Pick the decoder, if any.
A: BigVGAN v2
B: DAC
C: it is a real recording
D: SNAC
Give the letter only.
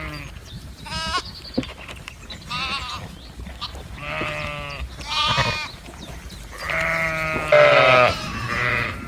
C